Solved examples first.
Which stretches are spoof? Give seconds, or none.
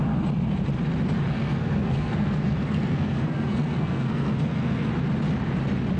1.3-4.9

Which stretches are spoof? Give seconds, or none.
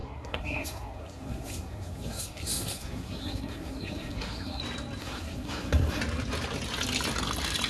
0.0-4.6; 5.0-6.0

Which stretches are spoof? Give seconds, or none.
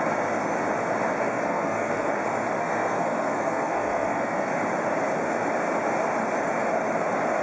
1.2-2.1; 2.6-4.5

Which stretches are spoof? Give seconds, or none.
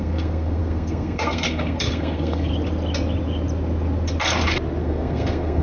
0.0-2.5; 4.8-5.6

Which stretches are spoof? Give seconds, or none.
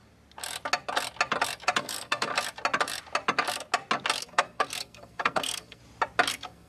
1.8-2.3; 4.2-5.8; 6.3-6.7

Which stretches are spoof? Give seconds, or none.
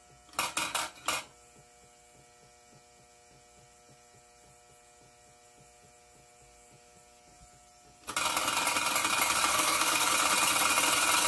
9.5-10.1